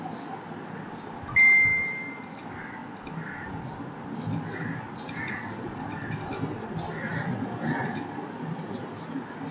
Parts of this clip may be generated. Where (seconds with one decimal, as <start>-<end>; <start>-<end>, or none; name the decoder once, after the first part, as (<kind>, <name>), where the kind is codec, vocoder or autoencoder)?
1.7-2.4 (vocoder, BigVGAN v2); 7.1-8.8